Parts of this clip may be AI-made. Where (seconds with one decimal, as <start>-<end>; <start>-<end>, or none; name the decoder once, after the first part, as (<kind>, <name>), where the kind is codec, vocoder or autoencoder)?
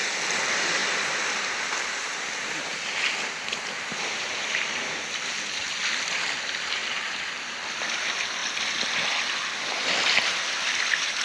0.0-8.4 (vocoder, BigVGAN v2); 9.2-11.2